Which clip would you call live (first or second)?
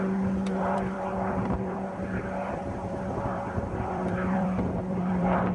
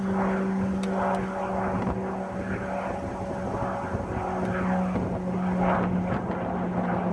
second